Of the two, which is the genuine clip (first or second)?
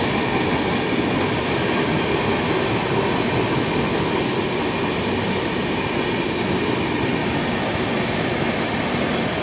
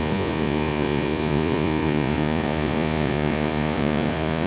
first